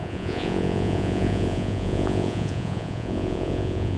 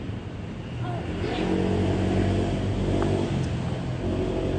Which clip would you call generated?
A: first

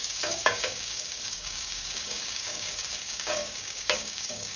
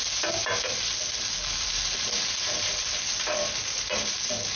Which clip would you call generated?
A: first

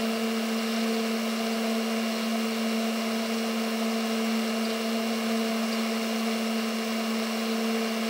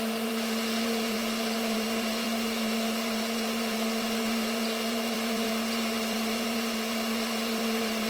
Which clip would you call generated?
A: second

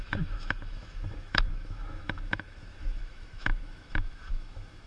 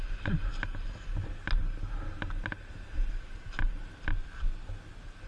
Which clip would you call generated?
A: first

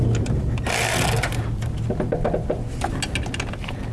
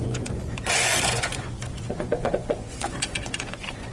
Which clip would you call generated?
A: second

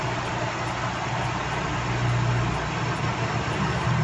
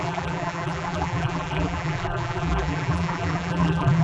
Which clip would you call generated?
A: second